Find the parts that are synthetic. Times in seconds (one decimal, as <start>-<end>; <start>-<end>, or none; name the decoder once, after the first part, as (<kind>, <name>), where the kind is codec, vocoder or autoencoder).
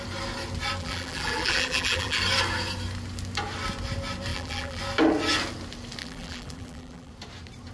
0.8-2.2 (vocoder, BigVGAN v2); 4.3-4.8; 6.0-7.1